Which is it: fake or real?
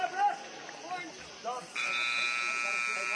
real